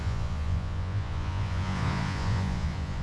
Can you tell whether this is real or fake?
fake